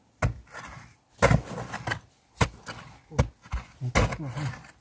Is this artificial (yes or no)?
no